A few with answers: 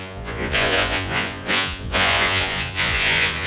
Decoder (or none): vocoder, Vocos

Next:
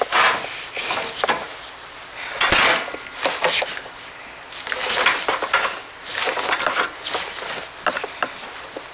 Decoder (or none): none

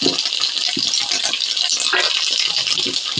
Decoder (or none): none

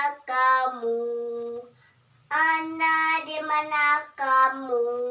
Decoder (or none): none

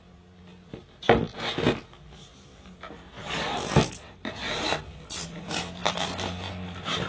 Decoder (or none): none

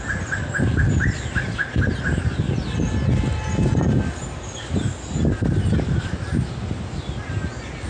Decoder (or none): none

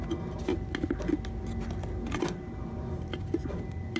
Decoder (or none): none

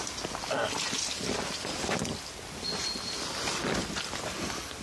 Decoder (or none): none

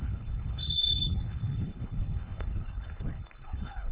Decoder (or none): codec, HILCodec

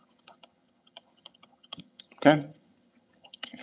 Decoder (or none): vocoder, HiFi-GAN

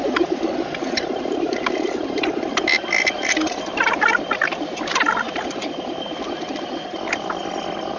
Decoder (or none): none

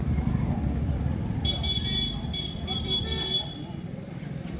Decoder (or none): vocoder, BigVGAN v2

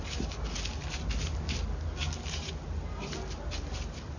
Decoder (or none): none